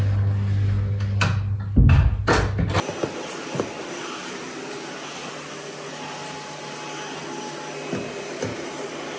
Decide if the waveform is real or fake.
real